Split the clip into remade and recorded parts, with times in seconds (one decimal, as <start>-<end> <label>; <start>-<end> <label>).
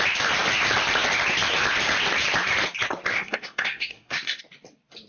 0.0-3.1 recorded; 3.1-4.4 remade; 4.4-5.1 recorded